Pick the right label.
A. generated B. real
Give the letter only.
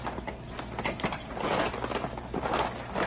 B